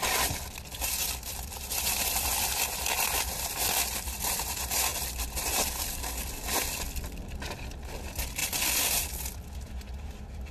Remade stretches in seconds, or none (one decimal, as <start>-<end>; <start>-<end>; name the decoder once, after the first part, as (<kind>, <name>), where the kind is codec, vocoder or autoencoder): 0.0-4.9 (vocoder, BigVGAN v2); 5.4-10.5